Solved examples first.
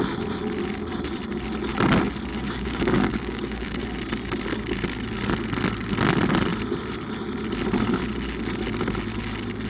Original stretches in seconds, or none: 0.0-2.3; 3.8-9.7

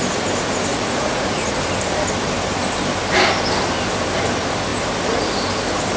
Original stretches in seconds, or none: 0.0-0.7; 1.6-6.0

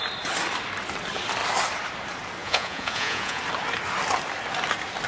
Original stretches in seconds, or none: 0.0-2.4; 3.4-5.1

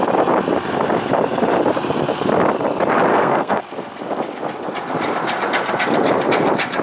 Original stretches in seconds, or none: 0.0-3.1; 3.6-6.8

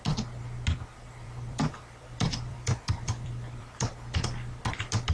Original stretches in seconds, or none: 0.0-0.9; 3.9-5.1

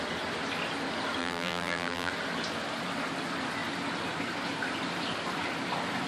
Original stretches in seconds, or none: 0.0-1.2; 2.1-6.1

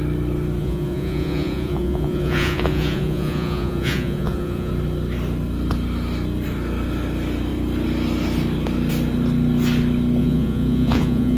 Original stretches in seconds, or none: 0.0-0.6; 4.7-10.2